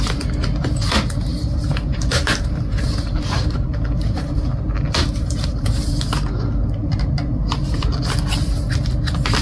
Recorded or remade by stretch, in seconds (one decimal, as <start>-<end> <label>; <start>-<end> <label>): 0.0-1.3 recorded; 1.3-5.9 remade; 5.9-6.8 recorded; 6.8-7.9 remade; 7.9-9.4 recorded